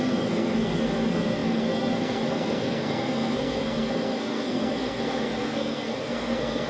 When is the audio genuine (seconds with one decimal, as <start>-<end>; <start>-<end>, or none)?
none